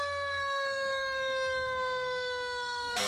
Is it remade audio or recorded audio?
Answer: remade